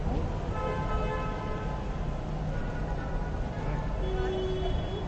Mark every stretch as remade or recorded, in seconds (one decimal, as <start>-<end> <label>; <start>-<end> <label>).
0.0-2.2 remade; 2.2-2.6 recorded; 2.6-3.3 remade; 3.3-5.1 recorded